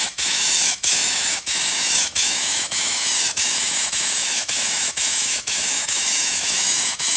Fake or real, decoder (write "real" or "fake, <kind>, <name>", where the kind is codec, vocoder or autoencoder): fake, autoencoder, DAC-VAE